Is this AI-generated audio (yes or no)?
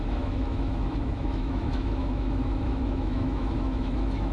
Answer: yes